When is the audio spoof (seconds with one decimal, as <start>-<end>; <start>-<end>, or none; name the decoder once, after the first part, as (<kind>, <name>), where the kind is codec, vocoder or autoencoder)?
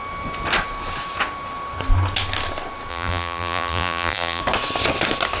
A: 2.9-4.4 (vocoder, BigVGAN v2)